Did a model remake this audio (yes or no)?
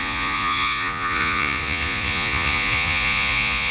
yes